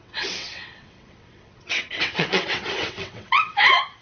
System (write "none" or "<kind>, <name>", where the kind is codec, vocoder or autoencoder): vocoder, WaveNeXt